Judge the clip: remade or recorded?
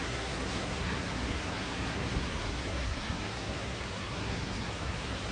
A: remade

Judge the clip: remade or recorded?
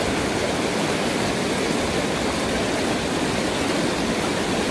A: recorded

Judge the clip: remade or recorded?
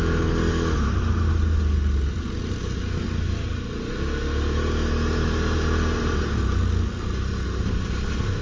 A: recorded